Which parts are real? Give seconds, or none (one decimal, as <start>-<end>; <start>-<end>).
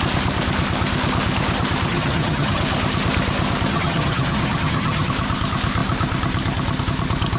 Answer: 0.0-1.9; 2.6-3.7; 5.1-7.4